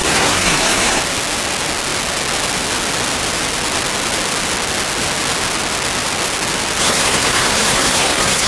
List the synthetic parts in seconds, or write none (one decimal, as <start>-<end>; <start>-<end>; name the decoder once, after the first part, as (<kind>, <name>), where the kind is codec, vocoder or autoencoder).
0.0-1.0 (codec, SNAC); 6.8-8.5